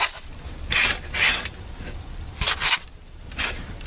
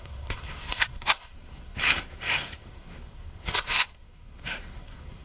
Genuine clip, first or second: first